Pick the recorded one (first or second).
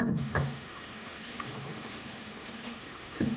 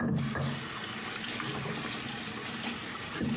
second